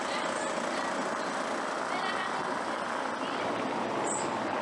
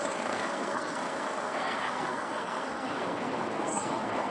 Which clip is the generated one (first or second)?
second